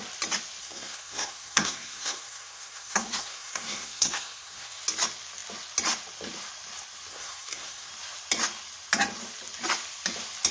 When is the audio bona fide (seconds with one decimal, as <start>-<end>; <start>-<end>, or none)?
0.0-0.6; 4.8-7.1; 7.9-10.5